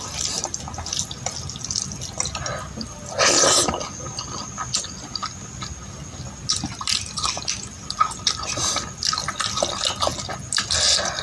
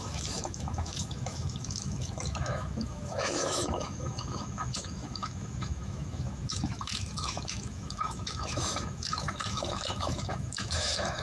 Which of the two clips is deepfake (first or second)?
second